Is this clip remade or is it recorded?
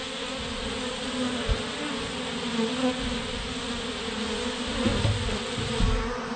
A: recorded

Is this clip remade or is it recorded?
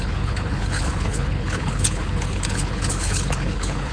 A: remade